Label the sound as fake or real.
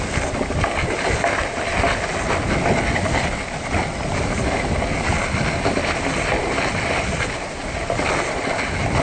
real